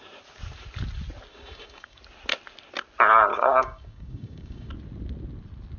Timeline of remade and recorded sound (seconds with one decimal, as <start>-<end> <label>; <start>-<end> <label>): 0.0-1.3 recorded; 1.3-2.0 remade; 2.0-3.3 recorded; 3.3-4.7 remade; 4.7-5.8 recorded